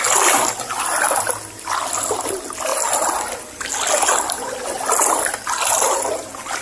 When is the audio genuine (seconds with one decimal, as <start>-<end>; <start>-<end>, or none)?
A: 0.0-6.6